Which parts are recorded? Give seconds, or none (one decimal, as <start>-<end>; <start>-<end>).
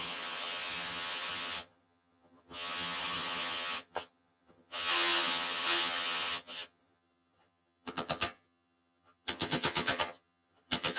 none